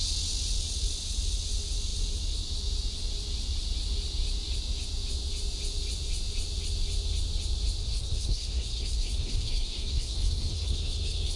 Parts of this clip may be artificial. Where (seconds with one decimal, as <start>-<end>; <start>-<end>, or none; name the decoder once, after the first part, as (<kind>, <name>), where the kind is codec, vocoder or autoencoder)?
7.8-11.4 (codec, SNAC)